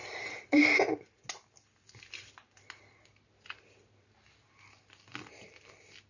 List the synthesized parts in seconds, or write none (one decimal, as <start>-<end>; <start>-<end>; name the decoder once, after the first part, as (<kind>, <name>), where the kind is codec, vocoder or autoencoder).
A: 0.0-0.6 (vocoder, BigVGAN v2)